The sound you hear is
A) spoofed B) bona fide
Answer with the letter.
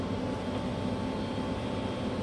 B